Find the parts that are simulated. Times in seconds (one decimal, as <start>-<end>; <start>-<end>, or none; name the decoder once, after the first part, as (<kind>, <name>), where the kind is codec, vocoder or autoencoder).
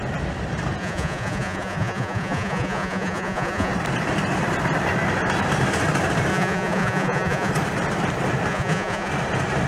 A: 0.8-3.7 (vocoder, Vocos); 6.3-7.5; 8.5-9.1